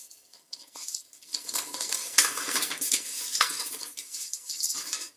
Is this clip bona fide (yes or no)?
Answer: no